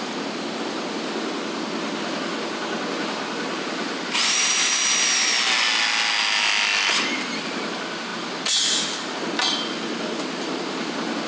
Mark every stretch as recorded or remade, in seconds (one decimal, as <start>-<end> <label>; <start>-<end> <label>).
0.0-3.5 recorded; 3.5-4.7 remade; 4.7-11.3 recorded